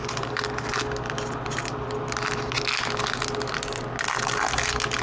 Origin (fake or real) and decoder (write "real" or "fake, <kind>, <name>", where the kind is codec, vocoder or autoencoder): real